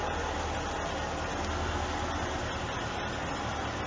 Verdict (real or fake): real